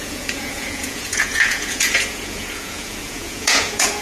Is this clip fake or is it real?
fake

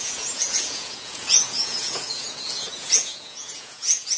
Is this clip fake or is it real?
fake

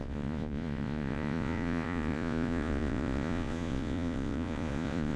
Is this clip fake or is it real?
fake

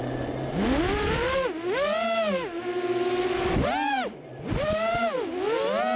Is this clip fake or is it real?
real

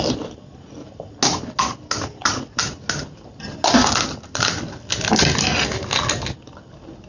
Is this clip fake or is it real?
real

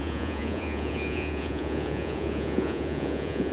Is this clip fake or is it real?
fake